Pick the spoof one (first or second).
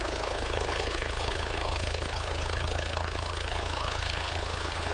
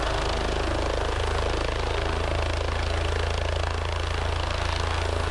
first